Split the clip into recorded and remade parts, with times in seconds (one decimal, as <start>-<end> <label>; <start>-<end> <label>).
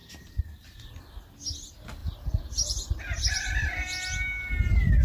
0.0-1.0 remade; 1.0-2.0 recorded; 2.0-3.6 remade; 3.6-5.0 recorded